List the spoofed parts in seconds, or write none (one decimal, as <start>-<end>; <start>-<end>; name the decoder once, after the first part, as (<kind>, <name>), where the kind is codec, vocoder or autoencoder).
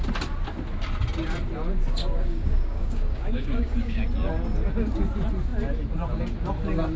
2.0-4.0 (codec, DAC)